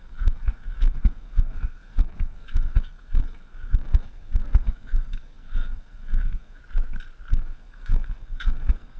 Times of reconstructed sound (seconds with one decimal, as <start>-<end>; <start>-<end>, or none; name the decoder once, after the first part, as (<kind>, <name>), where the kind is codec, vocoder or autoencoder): 0.0-6.6 (codec, SNAC); 7.3-9.0